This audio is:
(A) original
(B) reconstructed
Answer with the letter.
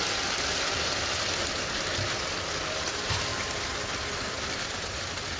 A